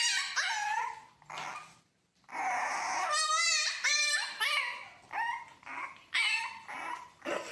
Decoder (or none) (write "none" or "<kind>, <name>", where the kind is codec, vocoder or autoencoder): none